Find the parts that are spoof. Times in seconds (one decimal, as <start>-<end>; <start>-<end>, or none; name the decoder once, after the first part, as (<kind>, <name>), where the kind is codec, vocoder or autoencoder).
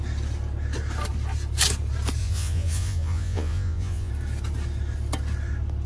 2.2-4.1 (vocoder, Vocos)